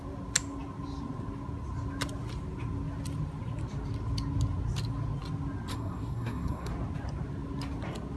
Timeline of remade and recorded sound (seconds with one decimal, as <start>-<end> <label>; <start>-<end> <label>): 0.0-5.7 recorded; 5.7-6.7 remade; 6.7-8.2 recorded